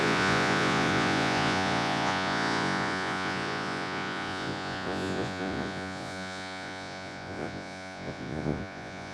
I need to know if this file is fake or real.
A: fake